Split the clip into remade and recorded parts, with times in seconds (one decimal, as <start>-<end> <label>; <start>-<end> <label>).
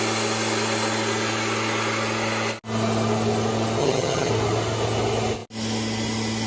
0.0-3.8 recorded; 3.8-4.3 remade; 4.3-6.5 recorded